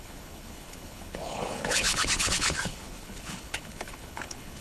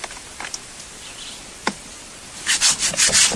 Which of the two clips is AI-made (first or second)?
first